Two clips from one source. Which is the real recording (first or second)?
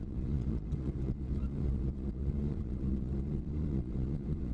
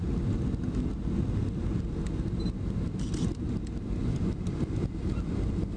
second